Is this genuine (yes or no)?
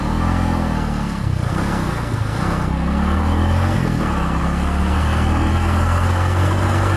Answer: no